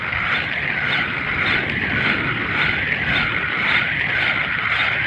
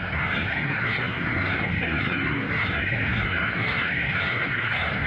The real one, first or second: first